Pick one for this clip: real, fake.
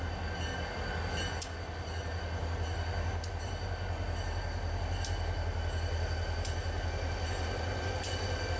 real